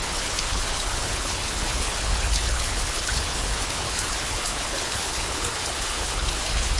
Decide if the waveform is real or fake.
fake